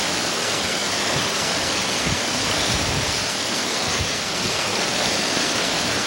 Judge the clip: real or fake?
fake